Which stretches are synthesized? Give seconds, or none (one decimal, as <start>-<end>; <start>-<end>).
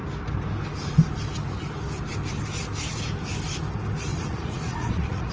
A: 4.1-5.3